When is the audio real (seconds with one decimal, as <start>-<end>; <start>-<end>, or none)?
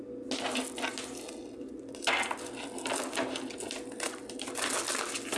0.0-5.4